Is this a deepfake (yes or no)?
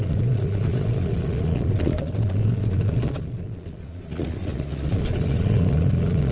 yes